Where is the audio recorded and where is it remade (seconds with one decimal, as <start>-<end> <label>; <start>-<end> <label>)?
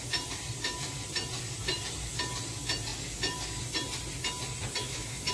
0.0-4.8 recorded; 4.8-5.3 remade